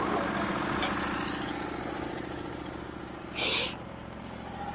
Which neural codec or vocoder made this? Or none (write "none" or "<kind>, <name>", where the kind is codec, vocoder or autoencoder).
none